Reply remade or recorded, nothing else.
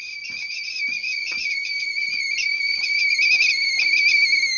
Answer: recorded